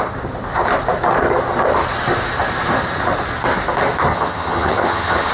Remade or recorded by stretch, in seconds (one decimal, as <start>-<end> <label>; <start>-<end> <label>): 0.0-4.1 recorded; 4.1-5.3 remade